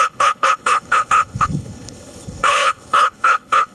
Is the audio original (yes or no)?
no